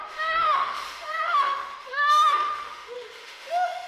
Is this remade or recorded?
remade